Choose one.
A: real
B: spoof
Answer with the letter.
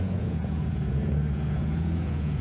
B